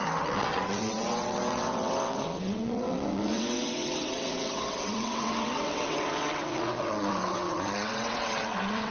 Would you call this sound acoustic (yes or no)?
no